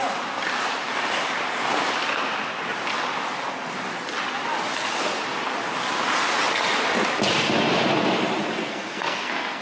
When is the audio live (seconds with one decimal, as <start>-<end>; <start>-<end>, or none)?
0.0-8.6